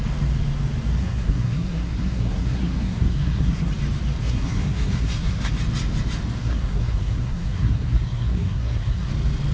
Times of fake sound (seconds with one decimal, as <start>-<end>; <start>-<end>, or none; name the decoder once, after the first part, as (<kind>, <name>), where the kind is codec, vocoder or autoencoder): 1.0-3.7 (codec, SNAC); 4.2-5.5; 6.4-9.1